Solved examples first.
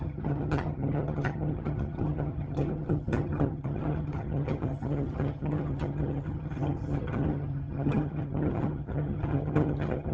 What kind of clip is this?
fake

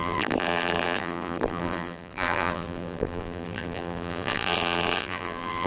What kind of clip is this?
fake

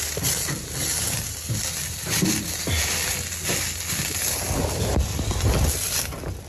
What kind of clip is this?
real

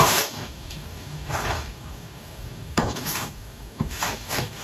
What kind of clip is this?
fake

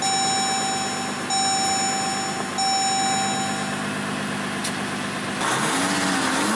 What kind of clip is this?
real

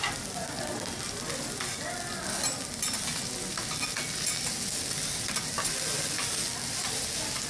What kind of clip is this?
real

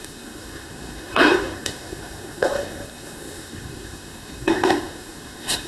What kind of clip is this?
fake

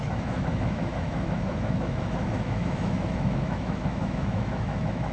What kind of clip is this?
fake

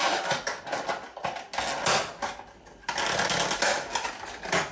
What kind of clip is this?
real